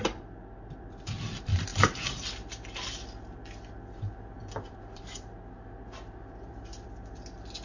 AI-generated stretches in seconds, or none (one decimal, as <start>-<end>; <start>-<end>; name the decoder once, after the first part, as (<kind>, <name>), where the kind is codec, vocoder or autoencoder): 0.0-7.6 (vocoder, BigVGAN v2)